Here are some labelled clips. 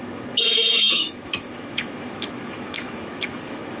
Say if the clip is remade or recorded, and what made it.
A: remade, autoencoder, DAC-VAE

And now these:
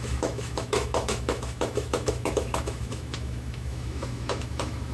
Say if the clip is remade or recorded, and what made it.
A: remade, autoencoder, DAC-VAE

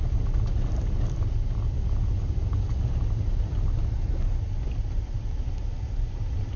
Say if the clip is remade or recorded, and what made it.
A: recorded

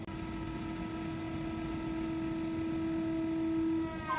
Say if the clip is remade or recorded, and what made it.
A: recorded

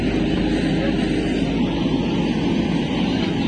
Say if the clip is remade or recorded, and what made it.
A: recorded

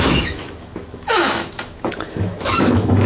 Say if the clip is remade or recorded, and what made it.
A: remade, autoencoder, DAC-VAE